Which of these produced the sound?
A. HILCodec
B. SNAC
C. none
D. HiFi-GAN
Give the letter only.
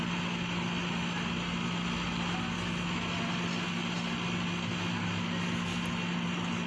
C